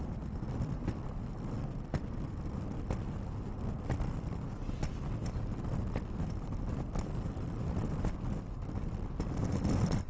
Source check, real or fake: real